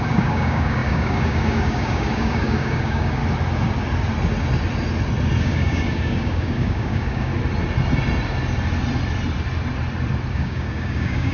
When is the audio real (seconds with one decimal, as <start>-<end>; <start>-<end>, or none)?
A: 3.2-5.4; 7.3-10.3